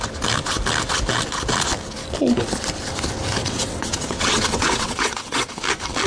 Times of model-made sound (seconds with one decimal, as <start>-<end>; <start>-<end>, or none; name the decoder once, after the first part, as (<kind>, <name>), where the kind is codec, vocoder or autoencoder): 3.4-5.5 (vocoder, WaveNeXt)